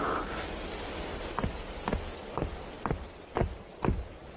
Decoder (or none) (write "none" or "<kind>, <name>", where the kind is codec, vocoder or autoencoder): none